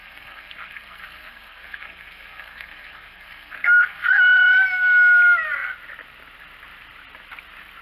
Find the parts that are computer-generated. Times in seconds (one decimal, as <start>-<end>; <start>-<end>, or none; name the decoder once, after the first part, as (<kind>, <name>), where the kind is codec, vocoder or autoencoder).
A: 0.0-4.1 (codec, SNAC)